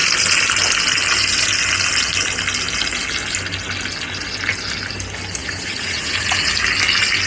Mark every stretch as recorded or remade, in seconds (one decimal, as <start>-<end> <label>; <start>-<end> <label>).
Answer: 0.0-5.4 recorded; 5.4-6.5 remade; 6.5-7.3 recorded